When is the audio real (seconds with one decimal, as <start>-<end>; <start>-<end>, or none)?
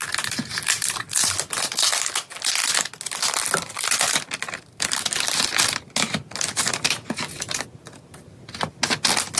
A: 0.0-9.4